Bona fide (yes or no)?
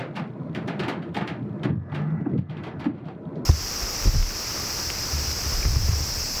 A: yes